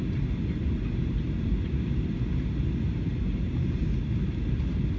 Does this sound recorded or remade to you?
recorded